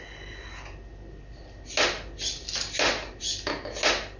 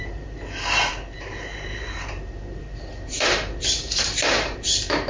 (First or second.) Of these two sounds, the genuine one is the first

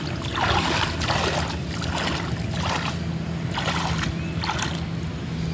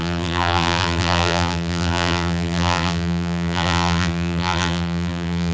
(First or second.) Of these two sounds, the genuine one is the first